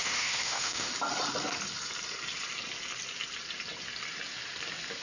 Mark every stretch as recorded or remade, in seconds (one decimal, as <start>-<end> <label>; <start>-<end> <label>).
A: 0.0-0.9 remade; 0.9-5.0 recorded